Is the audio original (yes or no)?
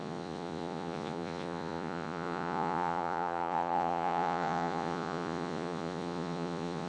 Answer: no